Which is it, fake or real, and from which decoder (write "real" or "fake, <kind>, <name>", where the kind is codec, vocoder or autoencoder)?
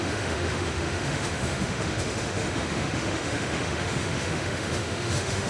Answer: fake, autoencoder, DAC-VAE